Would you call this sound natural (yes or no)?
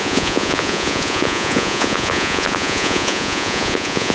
no